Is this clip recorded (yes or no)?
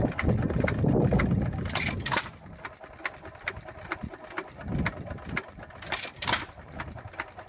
yes